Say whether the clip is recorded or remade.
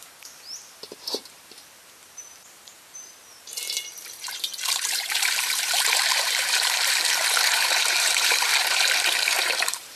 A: remade